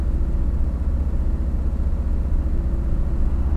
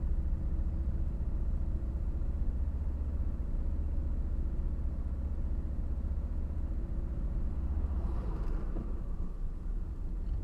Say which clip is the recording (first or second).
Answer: first